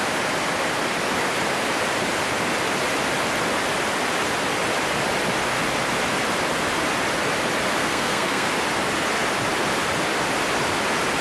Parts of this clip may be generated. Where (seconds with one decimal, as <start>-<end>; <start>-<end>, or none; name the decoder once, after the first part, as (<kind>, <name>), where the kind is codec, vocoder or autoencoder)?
7.8-8.5 (codec, SNAC)